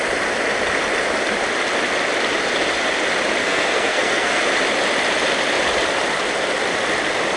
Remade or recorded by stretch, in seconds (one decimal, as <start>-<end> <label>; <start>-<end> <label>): 0.0-3.4 recorded; 3.4-4.4 remade; 4.4-7.4 recorded